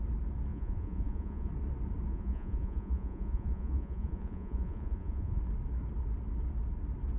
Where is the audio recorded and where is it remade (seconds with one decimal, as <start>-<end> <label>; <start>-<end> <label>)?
0.0-0.5 recorded; 0.5-1.5 remade; 1.5-2.1 recorded; 2.1-5.4 remade; 5.4-7.2 recorded